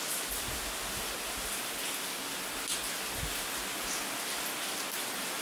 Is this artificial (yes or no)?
no